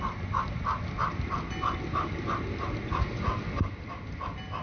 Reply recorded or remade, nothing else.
recorded